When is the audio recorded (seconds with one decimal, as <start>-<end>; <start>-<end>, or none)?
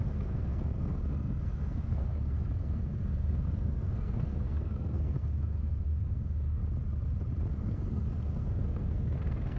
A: 6.6-7.5